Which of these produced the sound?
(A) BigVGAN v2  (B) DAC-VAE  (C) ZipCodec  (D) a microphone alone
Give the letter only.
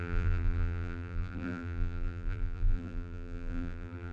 A